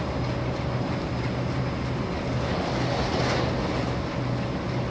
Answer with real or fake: real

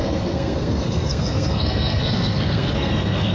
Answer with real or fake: fake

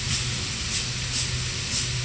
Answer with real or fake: real